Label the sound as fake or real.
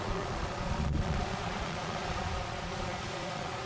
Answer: fake